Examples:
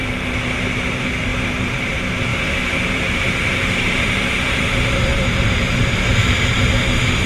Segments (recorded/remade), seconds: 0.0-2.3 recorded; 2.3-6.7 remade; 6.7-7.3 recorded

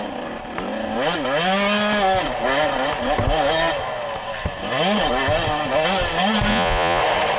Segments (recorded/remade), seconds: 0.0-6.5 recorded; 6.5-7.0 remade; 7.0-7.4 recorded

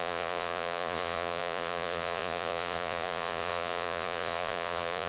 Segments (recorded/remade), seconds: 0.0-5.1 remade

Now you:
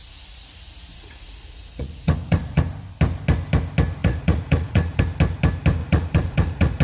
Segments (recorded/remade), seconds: 0.0-2.6 remade; 2.6-4.0 recorded; 4.0-5.0 remade; 5.0-5.8 recorded; 5.8-6.8 remade